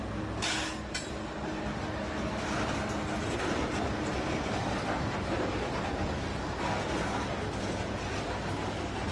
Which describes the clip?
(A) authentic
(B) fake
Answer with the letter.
A